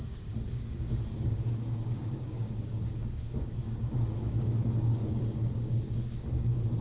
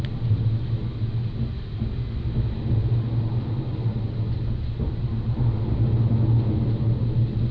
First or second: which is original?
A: second